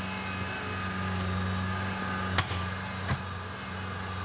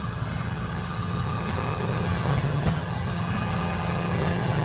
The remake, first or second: second